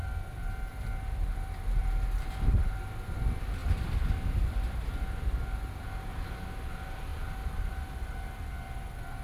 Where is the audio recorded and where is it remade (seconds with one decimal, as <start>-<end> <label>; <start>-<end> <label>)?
0.0-9.2 recorded